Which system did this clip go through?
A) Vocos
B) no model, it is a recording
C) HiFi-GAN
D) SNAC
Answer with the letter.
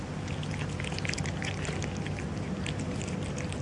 B